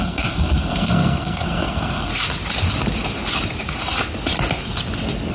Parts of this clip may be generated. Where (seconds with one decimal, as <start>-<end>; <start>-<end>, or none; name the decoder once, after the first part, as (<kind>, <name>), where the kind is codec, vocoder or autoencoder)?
0.0-2.1 (codec, SNAC)